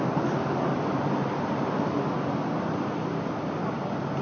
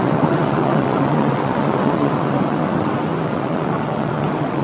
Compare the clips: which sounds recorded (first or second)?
first